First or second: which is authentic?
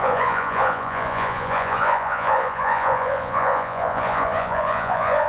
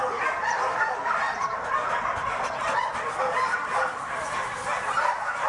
second